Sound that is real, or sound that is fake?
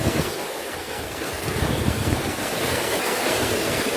fake